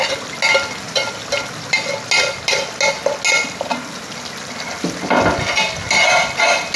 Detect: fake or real real